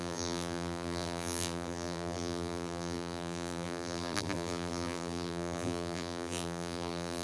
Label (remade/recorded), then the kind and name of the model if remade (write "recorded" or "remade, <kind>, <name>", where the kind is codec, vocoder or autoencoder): remade, vocoder, BigVGAN v2